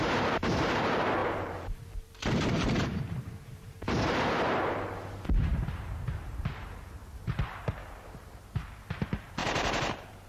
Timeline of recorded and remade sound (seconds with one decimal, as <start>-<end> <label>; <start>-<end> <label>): 0.0-7.0 remade; 7.0-8.0 recorded; 8.0-10.3 remade